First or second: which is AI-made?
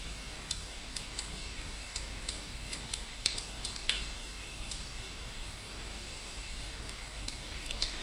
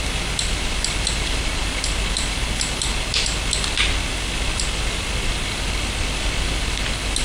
first